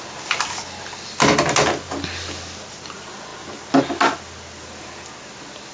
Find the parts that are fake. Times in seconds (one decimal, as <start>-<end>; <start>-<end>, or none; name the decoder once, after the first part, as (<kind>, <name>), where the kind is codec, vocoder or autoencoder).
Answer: none